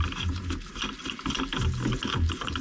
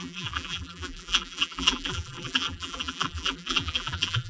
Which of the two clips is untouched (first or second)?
first